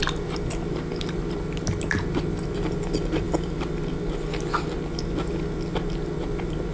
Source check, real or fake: real